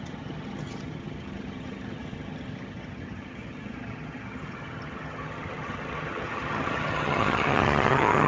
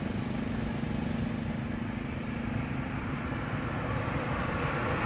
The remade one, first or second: first